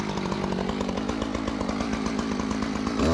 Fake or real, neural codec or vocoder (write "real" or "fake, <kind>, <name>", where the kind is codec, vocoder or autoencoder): real